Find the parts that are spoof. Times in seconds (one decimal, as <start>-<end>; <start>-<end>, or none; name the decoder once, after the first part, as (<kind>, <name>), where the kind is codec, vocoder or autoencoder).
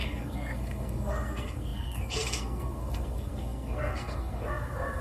0.0-5.0 (codec, SNAC)